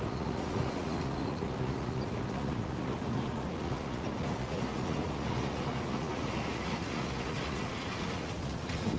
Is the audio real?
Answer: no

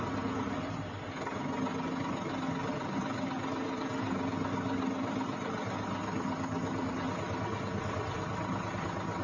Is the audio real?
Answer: yes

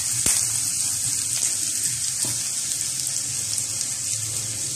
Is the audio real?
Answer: yes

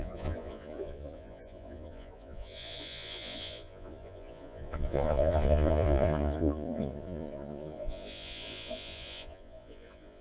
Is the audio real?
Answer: no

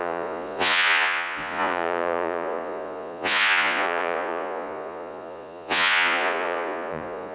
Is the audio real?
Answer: no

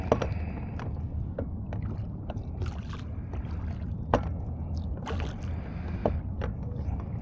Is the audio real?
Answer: yes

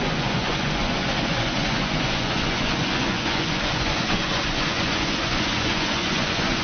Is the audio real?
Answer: no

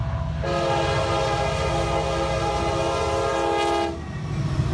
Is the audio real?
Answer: yes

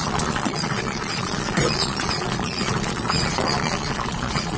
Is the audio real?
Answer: no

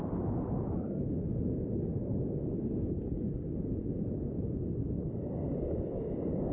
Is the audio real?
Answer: yes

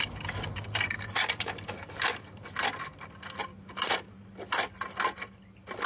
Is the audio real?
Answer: yes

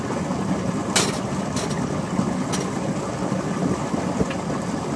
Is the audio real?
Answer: yes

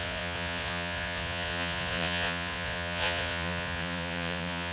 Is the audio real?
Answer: no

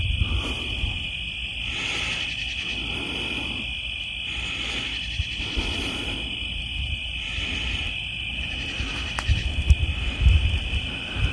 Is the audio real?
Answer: yes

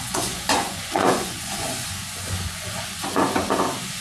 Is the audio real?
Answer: no